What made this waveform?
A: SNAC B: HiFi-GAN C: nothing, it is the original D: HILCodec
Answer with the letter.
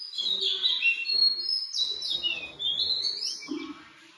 C